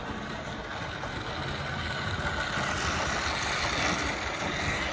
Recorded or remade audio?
recorded